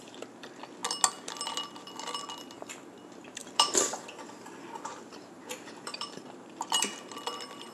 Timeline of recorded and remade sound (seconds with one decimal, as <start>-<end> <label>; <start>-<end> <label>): 0.0-3.4 recorded; 3.4-6.7 remade; 6.7-7.7 recorded